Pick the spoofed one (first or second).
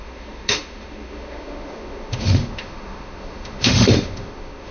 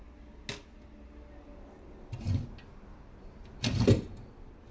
first